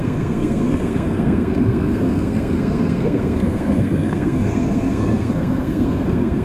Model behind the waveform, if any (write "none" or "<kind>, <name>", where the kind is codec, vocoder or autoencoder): codec, SNAC